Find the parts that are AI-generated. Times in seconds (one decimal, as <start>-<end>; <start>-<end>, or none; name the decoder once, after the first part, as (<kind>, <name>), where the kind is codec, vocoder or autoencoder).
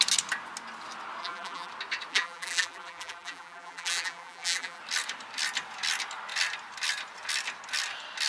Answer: 1.2-1.7 (vocoder, BigVGAN v2); 2.1-4.8